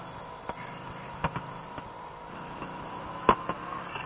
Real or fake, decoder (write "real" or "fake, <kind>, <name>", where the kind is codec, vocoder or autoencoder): real